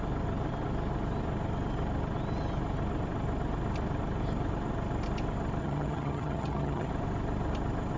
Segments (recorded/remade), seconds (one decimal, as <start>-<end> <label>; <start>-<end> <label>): 0.0-5.6 recorded; 5.6-6.9 remade; 6.9-8.0 recorded